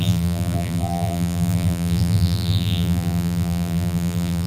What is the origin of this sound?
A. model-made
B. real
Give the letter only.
A